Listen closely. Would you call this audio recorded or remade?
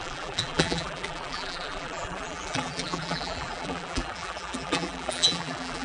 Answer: remade